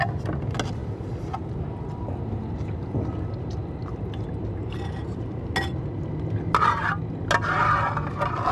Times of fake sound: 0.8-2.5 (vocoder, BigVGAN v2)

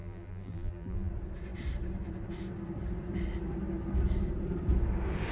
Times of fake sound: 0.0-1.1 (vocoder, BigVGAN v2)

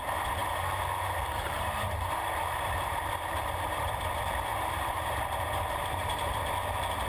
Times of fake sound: 0.4-3.9 (vocoder, BigVGAN v2); 4.5-6.5